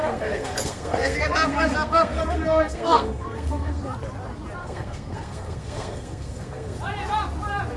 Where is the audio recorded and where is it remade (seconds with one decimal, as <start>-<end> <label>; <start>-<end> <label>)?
0.0-3.8 remade; 3.8-4.6 recorded; 4.6-6.8 remade; 6.8-7.8 recorded